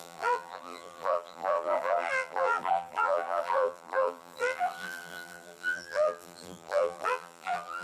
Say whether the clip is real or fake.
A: fake